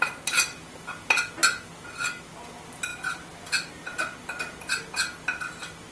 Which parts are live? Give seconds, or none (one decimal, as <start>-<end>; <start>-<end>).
0.0-5.9